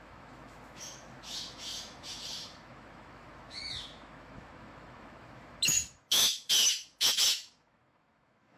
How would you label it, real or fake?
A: fake